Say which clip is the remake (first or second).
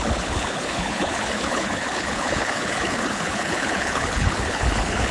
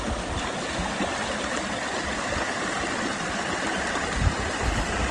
first